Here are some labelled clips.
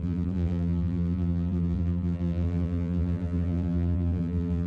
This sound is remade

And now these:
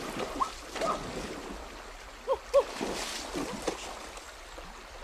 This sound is recorded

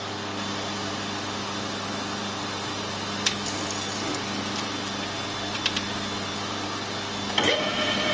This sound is recorded